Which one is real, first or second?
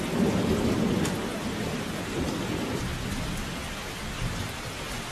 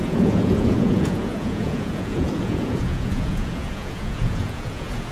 first